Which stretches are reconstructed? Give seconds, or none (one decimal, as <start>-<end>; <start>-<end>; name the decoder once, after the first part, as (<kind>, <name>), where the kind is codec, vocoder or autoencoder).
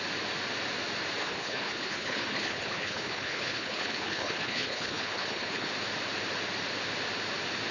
1.2-5.7 (codec, HILCodec)